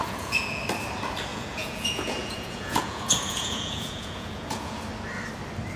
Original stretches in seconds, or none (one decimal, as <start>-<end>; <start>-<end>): 0.6-1.3; 4.8-5.8